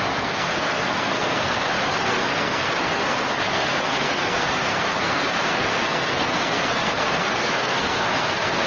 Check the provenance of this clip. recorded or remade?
remade